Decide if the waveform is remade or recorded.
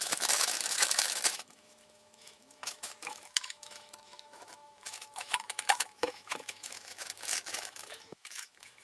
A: remade